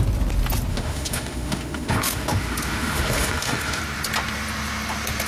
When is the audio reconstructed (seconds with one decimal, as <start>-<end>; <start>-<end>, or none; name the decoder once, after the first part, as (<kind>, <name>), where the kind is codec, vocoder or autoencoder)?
0.7-3.8 (autoencoder, DAC-VAE)